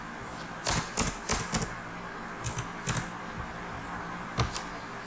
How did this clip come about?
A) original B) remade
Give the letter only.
A